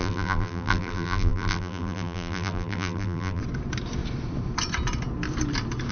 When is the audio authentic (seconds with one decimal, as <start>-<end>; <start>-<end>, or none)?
3.4-5.9